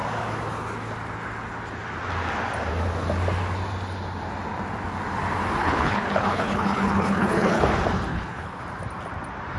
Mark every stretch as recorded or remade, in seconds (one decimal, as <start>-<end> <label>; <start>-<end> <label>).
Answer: 0.0-5.6 recorded; 5.6-7.6 remade; 7.6-8.1 recorded; 8.1-8.6 remade; 8.6-9.6 recorded

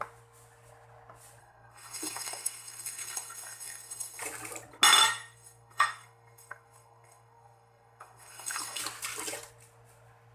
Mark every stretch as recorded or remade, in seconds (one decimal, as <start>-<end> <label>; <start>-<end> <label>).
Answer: 0.0-1.4 recorded; 1.4-4.2 remade; 4.2-5.0 recorded; 5.0-8.8 remade; 8.8-10.3 recorded

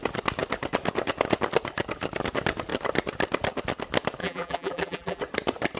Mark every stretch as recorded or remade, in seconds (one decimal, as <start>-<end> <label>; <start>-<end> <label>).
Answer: 0.0-4.2 recorded; 4.2-5.2 remade; 5.2-5.8 recorded

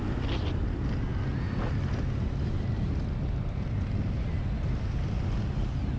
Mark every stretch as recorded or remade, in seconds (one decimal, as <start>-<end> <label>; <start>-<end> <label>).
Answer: 0.0-6.0 recorded

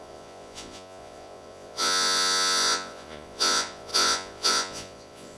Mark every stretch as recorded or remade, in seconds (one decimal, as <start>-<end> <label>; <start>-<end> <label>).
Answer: 0.0-5.4 remade

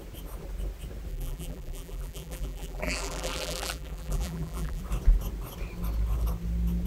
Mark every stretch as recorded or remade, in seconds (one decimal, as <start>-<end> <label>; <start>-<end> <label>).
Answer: 0.0-1.1 recorded; 1.1-4.8 remade; 4.8-6.9 recorded

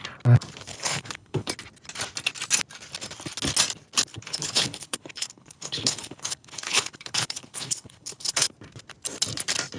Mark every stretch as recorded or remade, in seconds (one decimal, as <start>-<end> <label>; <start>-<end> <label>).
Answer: 0.0-0.7 recorded; 0.7-1.5 remade; 1.5-4.1 recorded; 4.1-8.5 remade; 8.5-9.8 recorded

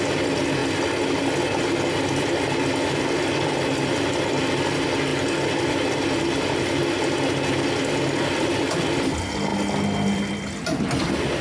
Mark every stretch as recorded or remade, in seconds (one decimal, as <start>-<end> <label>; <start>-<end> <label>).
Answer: 0.0-11.4 recorded